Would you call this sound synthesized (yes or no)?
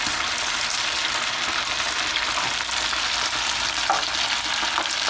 no